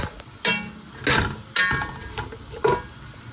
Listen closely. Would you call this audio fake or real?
real